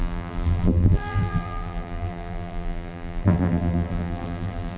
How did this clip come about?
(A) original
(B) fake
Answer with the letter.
B